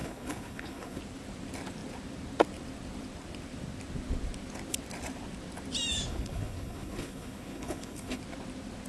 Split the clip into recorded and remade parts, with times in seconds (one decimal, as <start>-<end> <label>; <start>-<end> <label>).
0.0-1.0 remade; 1.0-6.1 recorded; 6.1-8.2 remade; 8.2-8.9 recorded